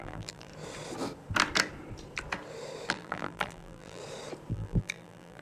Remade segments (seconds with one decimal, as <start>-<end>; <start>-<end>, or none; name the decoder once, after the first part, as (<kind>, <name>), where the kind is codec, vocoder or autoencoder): 0.0-0.5 (vocoder, BigVGAN v2); 2.9-4.0; 4.5-5.4